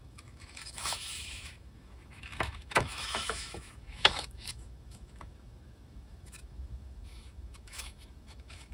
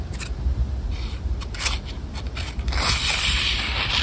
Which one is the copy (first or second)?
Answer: first